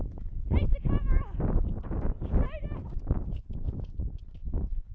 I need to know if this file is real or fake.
real